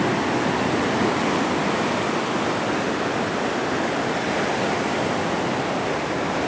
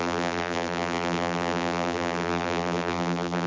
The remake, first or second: second